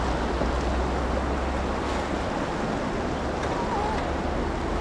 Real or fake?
real